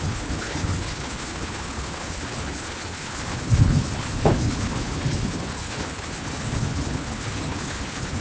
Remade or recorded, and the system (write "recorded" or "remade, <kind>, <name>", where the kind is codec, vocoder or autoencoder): remade, codec, HILCodec